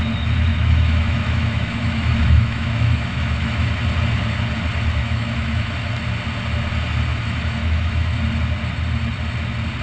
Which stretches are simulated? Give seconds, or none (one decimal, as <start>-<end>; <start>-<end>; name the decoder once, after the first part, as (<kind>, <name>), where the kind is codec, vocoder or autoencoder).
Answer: 0.5-3.8 (autoencoder, DAC-VAE); 5.0-5.9; 7.1-8.2